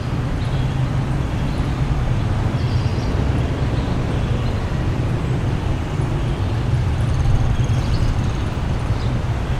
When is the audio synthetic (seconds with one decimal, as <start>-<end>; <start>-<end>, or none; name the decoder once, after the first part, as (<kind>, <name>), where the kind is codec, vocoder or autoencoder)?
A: none